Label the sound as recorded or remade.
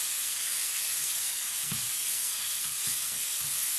remade